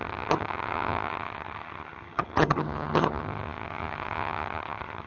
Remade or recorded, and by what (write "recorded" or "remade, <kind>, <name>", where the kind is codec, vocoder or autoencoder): remade, vocoder, HiFi-GAN